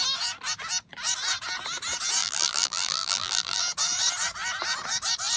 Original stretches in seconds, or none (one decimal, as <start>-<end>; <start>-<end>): 0.0-2.2; 3.6-5.4

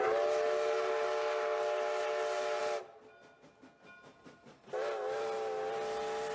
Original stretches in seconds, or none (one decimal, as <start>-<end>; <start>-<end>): 0.0-6.3

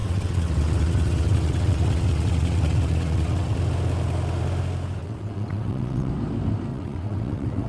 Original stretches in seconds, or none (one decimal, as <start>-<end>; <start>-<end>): 3.6-5.0; 6.1-6.7

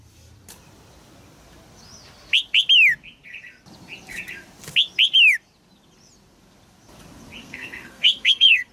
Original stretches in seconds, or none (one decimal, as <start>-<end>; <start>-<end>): 0.0-7.4